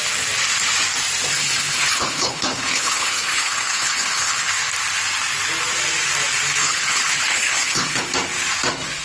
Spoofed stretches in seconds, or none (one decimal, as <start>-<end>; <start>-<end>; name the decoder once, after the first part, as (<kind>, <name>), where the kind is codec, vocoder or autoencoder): 1.3-4.5 (codec, HILCodec); 6.6-8.0